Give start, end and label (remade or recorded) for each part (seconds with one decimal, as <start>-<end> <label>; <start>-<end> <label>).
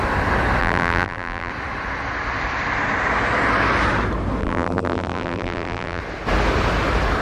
0.0-0.6 recorded; 0.6-1.5 remade; 1.5-4.4 recorded; 4.4-6.0 remade; 6.0-7.2 recorded